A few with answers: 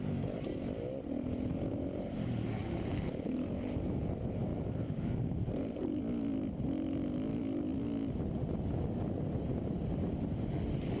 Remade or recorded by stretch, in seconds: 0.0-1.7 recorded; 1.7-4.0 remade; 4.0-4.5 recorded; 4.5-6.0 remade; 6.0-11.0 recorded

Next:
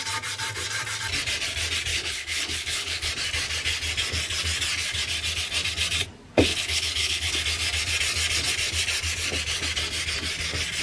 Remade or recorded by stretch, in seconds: 0.0-1.9 recorded; 1.9-3.1 remade; 3.1-6.5 recorded; 6.5-7.3 remade; 7.3-10.8 recorded

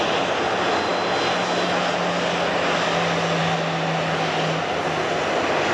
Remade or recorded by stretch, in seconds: 0.0-5.7 recorded

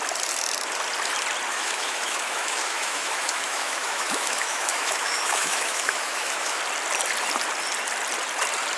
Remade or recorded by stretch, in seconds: 0.0-1.5 recorded; 1.5-6.6 remade; 6.6-8.8 recorded

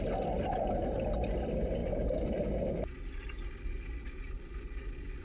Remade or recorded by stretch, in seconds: 0.0-5.2 recorded